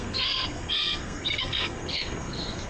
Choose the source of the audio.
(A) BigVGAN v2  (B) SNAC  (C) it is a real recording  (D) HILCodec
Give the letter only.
B